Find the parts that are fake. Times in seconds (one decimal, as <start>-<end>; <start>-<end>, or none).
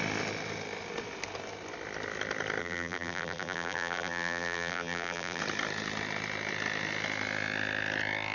2.6-5.4